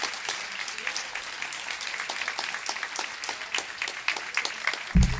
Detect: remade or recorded recorded